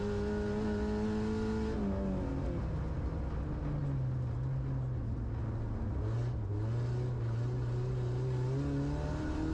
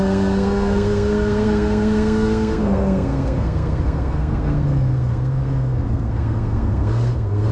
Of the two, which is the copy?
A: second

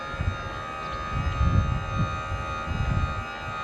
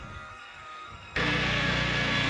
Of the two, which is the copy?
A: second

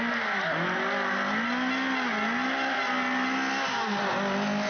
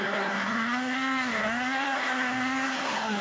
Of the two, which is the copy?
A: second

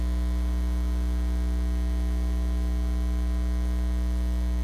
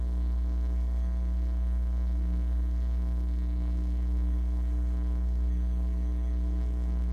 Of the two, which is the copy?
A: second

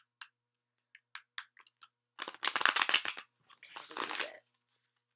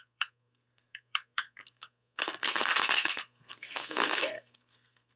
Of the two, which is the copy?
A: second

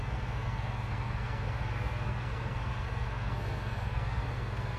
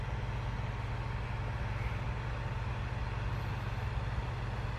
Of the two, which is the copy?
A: first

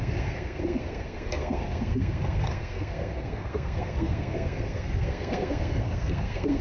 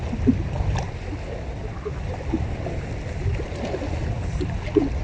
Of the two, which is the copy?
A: first